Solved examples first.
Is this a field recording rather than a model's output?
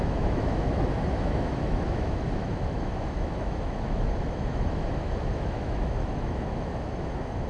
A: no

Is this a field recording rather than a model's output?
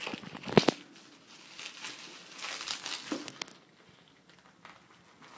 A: yes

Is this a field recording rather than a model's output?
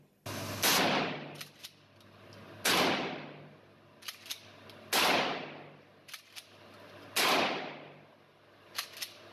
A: yes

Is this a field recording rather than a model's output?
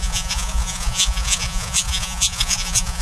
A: no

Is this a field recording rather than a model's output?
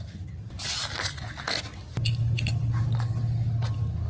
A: yes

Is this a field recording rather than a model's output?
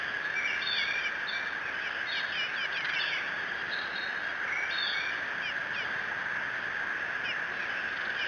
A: yes